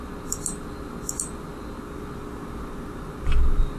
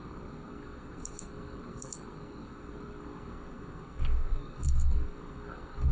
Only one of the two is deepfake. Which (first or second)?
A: second